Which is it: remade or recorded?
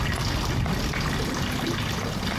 recorded